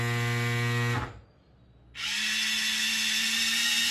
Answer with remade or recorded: recorded